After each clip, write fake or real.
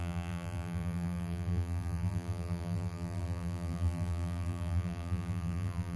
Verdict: fake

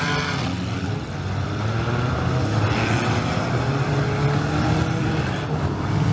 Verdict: real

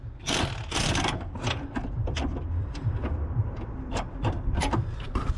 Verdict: fake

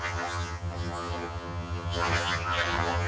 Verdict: fake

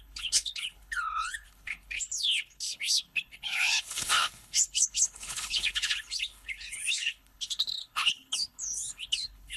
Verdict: fake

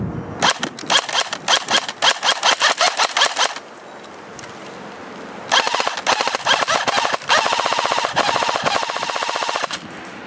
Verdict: real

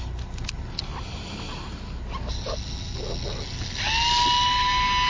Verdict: real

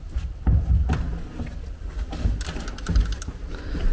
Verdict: real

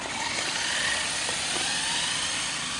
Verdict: real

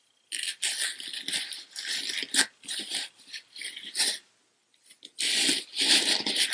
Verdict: real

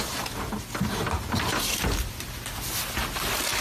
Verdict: real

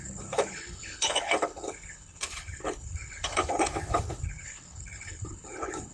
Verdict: fake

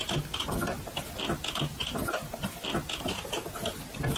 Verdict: real